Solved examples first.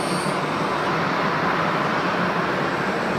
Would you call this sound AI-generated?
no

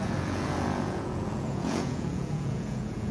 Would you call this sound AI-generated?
yes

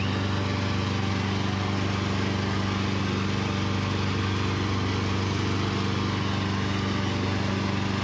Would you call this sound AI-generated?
no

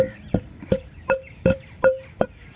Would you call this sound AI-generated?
yes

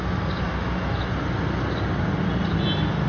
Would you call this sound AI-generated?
no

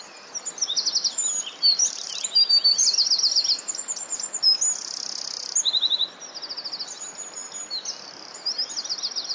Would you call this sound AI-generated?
no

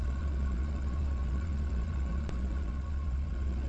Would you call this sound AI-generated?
yes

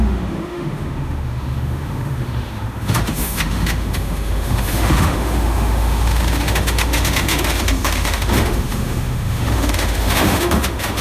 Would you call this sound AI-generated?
yes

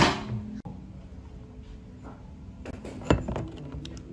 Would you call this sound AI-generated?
no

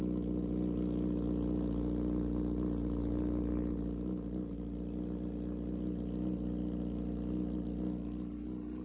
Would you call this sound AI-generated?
no